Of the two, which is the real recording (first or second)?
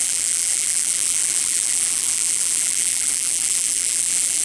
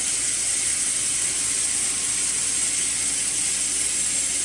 second